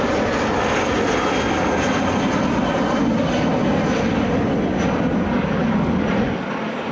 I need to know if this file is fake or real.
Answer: real